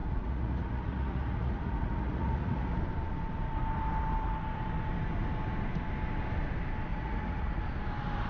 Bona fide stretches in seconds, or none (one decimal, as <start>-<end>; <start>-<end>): 2.8-6.9; 7.6-8.3